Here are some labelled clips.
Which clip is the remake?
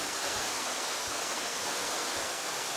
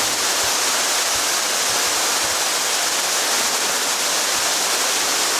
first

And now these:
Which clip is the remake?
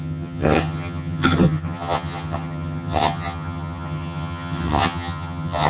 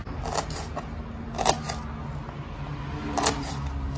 first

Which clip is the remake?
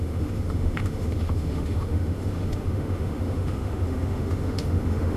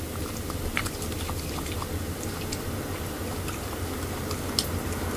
first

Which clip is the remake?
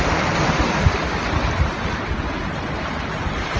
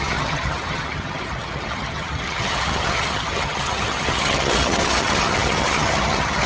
second